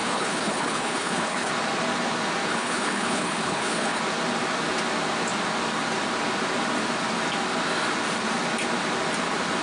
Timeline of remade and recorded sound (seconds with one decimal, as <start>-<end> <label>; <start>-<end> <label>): 0.0-1.5 remade; 1.5-2.5 recorded; 2.5-4.0 remade; 4.0-9.6 recorded